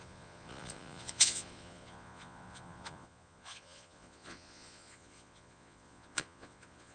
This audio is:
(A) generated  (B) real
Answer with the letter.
A